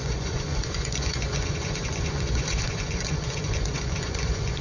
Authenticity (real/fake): fake